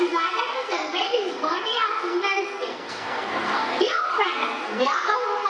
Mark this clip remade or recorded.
remade